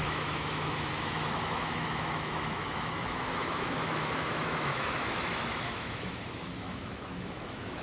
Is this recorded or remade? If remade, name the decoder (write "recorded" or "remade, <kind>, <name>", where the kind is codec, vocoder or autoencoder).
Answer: remade, autoencoder, DAC-VAE